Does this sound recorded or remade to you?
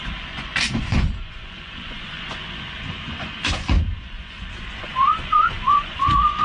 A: remade